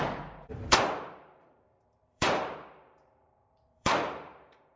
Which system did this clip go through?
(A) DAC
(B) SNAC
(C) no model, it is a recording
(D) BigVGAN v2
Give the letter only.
D